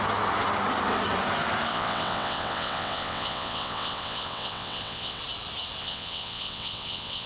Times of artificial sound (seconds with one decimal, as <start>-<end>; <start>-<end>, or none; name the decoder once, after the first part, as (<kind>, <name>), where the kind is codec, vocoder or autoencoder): 1.7-5.2 (vocoder, WaveNeXt); 5.8-7.3